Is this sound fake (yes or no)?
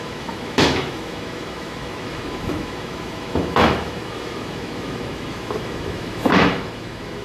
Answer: yes